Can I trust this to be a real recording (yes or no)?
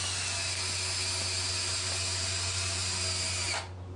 yes